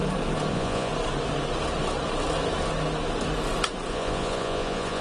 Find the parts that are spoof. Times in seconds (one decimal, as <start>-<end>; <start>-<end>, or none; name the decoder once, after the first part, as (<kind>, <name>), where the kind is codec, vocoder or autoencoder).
0.5-0.9 (vocoder, Vocos); 3.9-5.0